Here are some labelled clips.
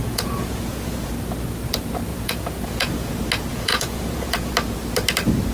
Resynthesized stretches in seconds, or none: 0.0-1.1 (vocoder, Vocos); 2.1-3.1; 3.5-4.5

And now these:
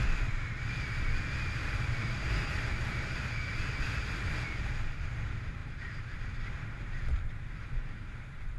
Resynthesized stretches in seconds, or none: 5.6-8.6 (vocoder, BigVGAN v2)

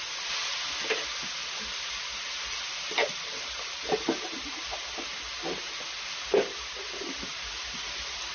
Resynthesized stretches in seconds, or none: 3.0-5.6 (vocoder, BigVGAN v2); 7.3-8.3

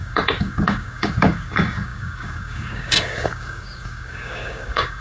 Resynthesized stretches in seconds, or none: 0.0-5.0 (codec, DAC)

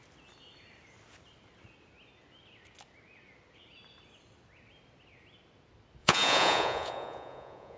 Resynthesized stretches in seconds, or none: 6.0-7.8 (vocoder, Vocos)

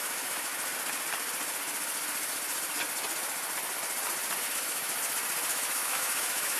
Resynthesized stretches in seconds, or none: 0.0-0.5 (autoencoder, DAC-VAE); 4.4-4.9; 5.5-6.6

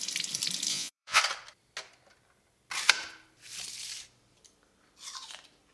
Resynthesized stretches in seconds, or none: 0.7-1.2 (vocoder, Vocos)

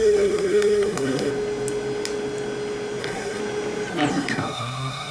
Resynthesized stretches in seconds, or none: 0.0-1.3 (codec, SNAC); 3.0-3.4; 4.1-5.1